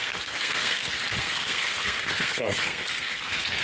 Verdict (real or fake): fake